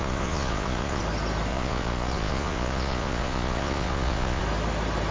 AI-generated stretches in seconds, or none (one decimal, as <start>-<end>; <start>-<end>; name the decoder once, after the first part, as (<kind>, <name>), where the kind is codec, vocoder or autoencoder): 0.0-1.0 (vocoder, Vocos); 1.5-4.4